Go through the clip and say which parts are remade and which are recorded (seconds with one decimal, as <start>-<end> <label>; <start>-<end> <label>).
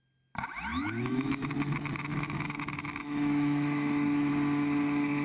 0.0-0.7 recorded; 0.7-1.5 remade; 1.5-2.1 recorded; 2.1-4.3 remade; 4.3-5.2 recorded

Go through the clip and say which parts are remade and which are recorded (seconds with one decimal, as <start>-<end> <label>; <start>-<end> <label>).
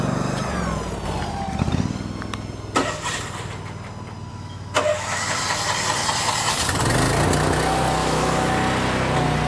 0.0-4.3 recorded; 4.3-5.2 remade; 5.2-8.0 recorded; 8.0-8.5 remade; 8.5-9.5 recorded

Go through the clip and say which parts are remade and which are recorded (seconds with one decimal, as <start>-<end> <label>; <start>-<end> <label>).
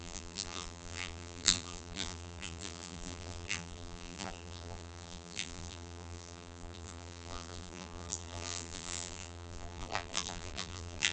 0.0-11.1 remade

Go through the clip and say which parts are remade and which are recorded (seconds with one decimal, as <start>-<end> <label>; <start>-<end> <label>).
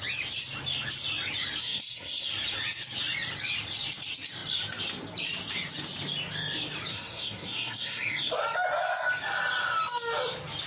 0.0-1.6 recorded; 1.6-2.3 remade; 2.3-6.9 recorded; 6.9-8.3 remade; 8.3-10.7 recorded